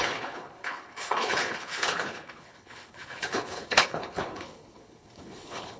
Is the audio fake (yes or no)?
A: yes